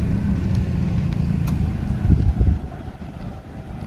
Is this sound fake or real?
real